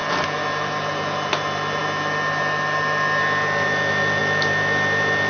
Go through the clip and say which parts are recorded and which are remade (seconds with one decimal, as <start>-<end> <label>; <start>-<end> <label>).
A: 0.0-5.3 recorded